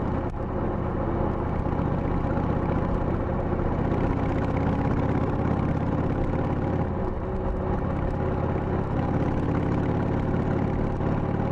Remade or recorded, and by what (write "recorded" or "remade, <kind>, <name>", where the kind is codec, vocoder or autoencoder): recorded